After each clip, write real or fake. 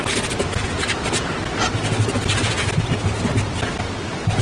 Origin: real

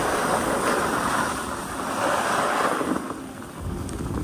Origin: real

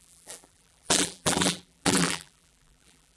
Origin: fake